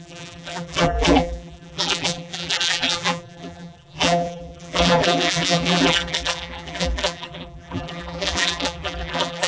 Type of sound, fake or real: fake